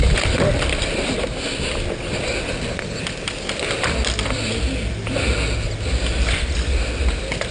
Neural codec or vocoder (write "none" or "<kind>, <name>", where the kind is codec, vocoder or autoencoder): none